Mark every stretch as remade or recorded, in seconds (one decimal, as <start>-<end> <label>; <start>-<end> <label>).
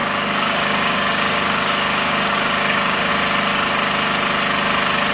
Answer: 0.0-3.1 remade; 3.1-5.1 recorded